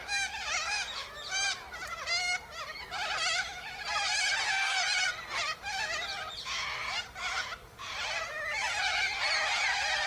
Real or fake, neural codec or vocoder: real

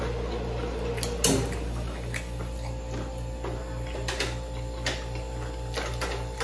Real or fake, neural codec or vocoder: real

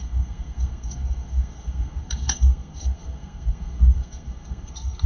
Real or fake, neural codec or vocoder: fake, codec, SNAC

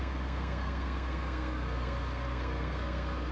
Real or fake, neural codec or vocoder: fake, codec, SNAC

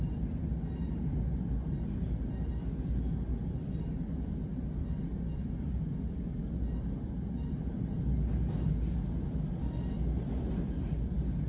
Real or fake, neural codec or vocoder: real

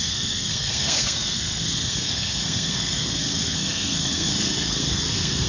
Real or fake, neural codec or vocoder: fake, codec, SNAC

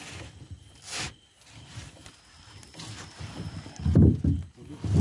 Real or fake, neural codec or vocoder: real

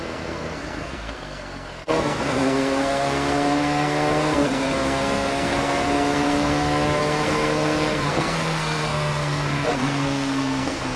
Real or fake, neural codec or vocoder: fake, codec, SNAC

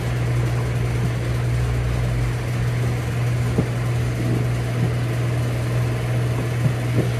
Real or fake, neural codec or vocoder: real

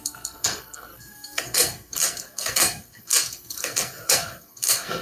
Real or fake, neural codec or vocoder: fake, codec, SNAC